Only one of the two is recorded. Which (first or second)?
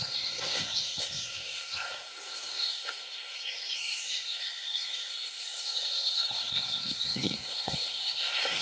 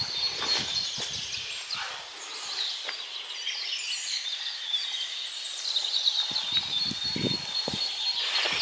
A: second